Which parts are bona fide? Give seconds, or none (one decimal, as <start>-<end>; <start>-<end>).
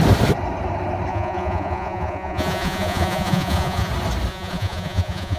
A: 0.0-1.1; 3.9-4.3